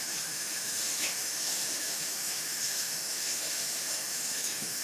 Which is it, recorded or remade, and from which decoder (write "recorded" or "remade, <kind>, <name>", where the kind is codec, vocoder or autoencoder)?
remade, autoencoder, DAC-VAE